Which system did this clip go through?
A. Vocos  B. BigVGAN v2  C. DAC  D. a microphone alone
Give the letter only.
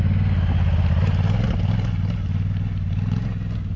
D